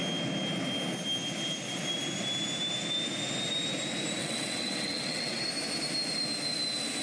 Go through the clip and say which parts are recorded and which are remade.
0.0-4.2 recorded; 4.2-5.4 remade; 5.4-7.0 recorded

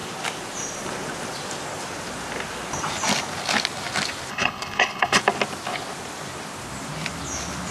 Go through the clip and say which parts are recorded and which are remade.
0.0-4.3 recorded; 4.3-5.2 remade; 5.2-7.7 recorded

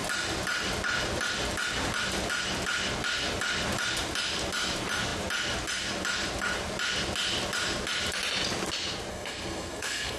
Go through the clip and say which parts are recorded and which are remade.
0.0-9.1 recorded; 9.1-10.2 remade

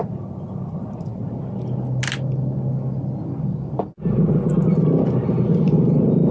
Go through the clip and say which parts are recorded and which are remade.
0.0-6.3 recorded